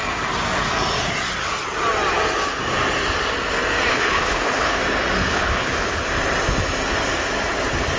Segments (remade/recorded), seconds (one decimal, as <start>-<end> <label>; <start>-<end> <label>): 0.0-3.9 recorded; 3.9-4.8 remade; 4.8-5.3 recorded; 5.3-6.0 remade; 6.0-8.0 recorded